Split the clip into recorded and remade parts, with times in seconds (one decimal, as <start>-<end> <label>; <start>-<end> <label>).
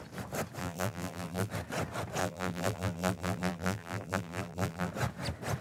0.0-0.6 recorded; 0.6-1.5 remade; 1.5-2.2 recorded; 2.2-4.9 remade; 4.9-5.6 recorded